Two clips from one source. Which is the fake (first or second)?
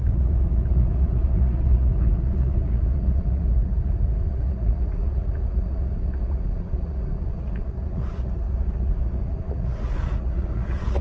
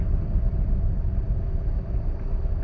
first